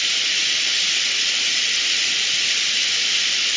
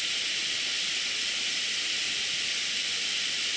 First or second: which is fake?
first